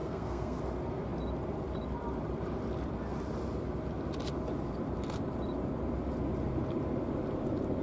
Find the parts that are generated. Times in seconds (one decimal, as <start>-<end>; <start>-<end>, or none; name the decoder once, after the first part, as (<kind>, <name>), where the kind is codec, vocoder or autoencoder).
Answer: 0.0-0.6 (codec, SNAC)